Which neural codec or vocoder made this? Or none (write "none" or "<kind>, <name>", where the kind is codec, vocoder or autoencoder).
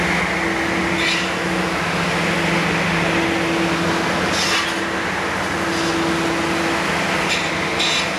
none